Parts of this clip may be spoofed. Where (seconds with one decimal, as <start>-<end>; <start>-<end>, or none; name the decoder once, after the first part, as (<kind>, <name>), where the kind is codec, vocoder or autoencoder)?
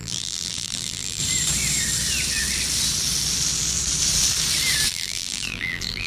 0.0-1.2 (vocoder, BigVGAN v2); 4.9-6.1